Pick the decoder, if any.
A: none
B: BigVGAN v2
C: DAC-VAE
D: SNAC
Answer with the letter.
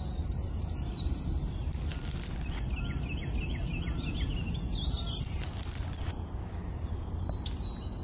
A